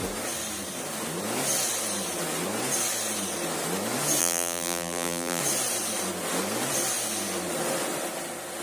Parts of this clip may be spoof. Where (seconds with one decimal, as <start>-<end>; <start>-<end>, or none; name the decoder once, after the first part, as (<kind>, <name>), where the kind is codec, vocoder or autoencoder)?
4.2-5.4 (vocoder, BigVGAN v2)